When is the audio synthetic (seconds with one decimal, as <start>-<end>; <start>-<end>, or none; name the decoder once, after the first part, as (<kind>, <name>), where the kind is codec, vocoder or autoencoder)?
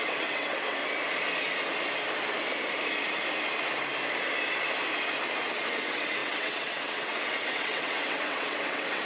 0.0-0.8 (vocoder, WaveNeXt); 5.7-9.1